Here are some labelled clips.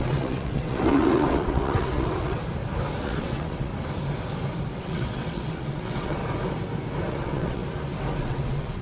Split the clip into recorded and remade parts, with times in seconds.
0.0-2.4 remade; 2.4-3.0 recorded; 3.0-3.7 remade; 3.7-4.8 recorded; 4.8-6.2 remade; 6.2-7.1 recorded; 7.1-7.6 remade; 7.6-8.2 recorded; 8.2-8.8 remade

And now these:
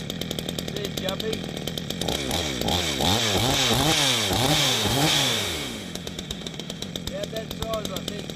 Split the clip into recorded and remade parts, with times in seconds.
0.0-4.5 recorded; 4.5-6.9 remade; 6.9-8.4 recorded

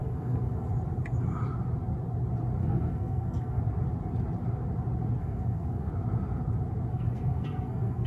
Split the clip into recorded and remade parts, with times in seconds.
0.0-0.7 remade; 0.7-2.6 recorded; 2.6-3.6 remade; 3.6-5.2 recorded; 5.2-5.9 remade; 5.9-6.9 recorded; 6.9-8.1 remade